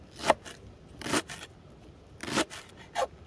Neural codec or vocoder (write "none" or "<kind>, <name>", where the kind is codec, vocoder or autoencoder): none